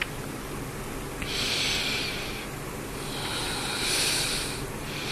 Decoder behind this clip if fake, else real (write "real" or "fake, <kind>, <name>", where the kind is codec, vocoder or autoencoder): real